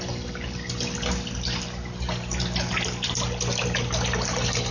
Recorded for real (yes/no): yes